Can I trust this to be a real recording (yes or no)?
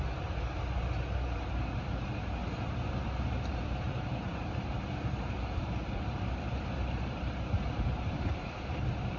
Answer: no